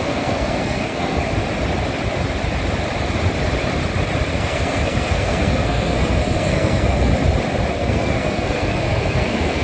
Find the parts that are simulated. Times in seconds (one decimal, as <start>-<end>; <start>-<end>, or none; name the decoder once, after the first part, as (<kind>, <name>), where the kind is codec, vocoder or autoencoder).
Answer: 0.0-1.4 (codec, SNAC); 4.3-7.1; 7.7-9.6